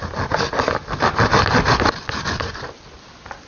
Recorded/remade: recorded